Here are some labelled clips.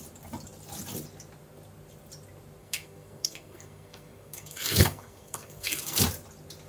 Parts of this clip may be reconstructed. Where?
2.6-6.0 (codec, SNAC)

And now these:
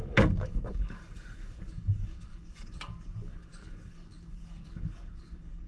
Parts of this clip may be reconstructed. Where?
0.0-5.7 (codec, DAC)

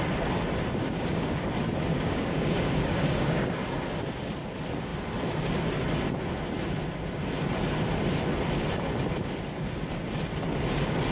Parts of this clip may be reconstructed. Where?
0.8-1.4 (codec, DAC); 1.9-3.5

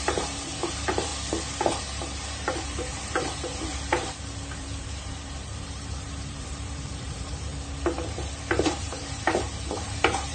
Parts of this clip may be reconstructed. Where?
0.0-1.1 (vocoder, BigVGAN v2); 2.3-3.7; 4.6-7.5; 8.4-10.3

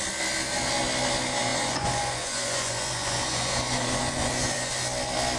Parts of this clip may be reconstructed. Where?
1.5-4.7 (vocoder, Vocos)

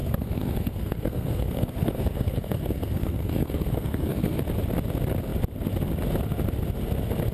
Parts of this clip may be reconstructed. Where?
0.0-4.4 (codec, SNAC)